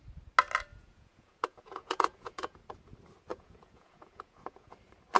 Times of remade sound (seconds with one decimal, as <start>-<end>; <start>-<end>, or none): 0.7-2.6; 3.3-4.7